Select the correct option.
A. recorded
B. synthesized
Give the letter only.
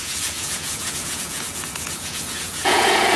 B